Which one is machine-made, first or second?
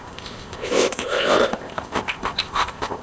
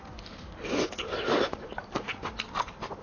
first